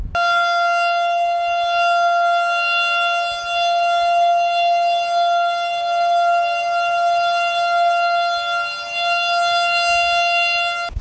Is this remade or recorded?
recorded